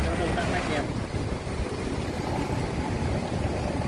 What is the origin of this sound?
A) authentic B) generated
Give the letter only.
A